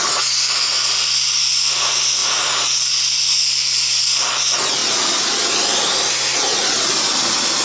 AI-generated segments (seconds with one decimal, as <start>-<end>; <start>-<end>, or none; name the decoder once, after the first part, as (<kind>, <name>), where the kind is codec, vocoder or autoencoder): none